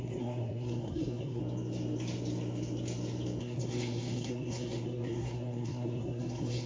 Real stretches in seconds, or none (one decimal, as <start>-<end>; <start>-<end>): 1.4-3.4